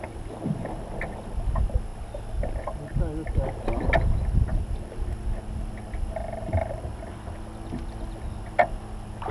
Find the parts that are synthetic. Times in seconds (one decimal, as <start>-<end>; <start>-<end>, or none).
none